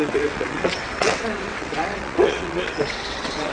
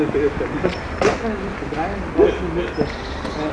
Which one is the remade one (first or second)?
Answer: first